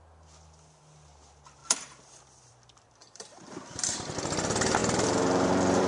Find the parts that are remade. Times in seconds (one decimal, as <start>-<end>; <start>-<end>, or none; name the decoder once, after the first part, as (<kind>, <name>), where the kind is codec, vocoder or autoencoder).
1.6-2.5 (vocoder, BigVGAN v2); 3.0-4.2; 4.8-5.9